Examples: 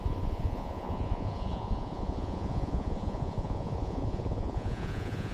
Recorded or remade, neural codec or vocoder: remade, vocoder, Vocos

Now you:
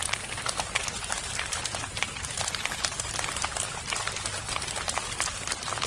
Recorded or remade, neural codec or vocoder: remade, vocoder, BigVGAN v2